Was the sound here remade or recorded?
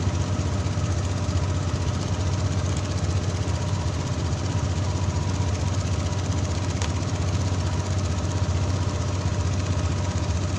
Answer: recorded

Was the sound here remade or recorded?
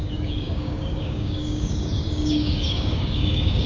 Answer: remade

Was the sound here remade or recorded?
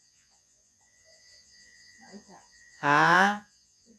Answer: remade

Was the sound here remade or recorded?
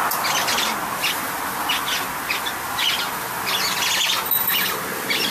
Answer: recorded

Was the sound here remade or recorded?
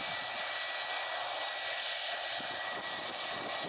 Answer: recorded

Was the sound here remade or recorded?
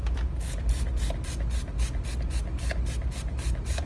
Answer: recorded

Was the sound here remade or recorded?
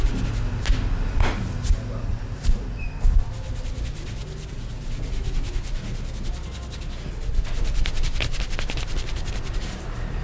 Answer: recorded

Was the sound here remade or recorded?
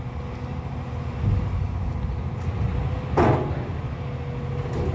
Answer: recorded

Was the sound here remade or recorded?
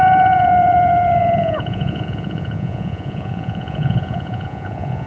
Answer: remade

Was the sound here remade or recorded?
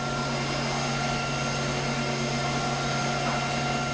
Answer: recorded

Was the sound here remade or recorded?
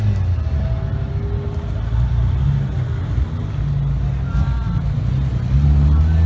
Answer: recorded